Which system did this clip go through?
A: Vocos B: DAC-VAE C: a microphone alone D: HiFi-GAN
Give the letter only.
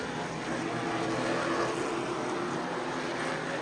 C